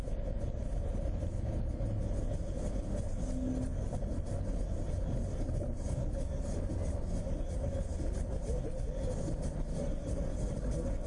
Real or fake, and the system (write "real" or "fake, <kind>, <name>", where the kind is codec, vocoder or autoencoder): real